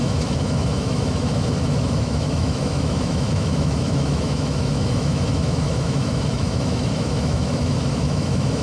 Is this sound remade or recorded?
remade